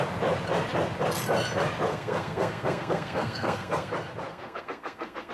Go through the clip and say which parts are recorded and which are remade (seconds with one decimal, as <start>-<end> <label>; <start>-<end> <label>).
0.0-1.9 recorded; 1.9-3.9 remade; 3.9-4.3 recorded; 4.3-5.3 remade